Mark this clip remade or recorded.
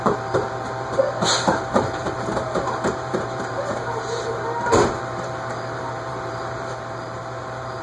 remade